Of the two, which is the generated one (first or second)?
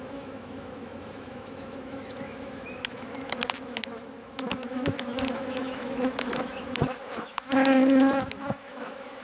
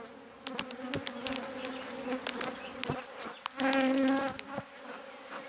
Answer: first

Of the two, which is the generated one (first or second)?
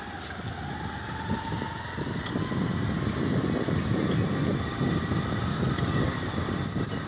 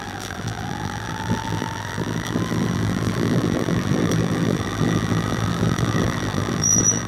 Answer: second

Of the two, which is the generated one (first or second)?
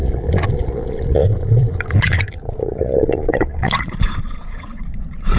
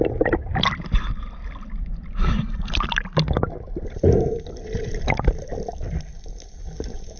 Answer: first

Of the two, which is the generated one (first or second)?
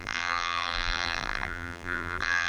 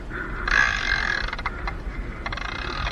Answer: first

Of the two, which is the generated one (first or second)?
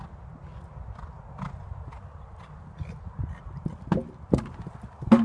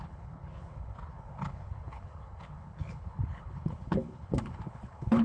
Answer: second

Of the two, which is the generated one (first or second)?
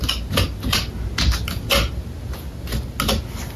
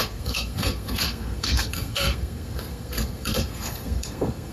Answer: second